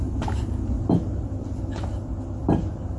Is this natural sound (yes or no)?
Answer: yes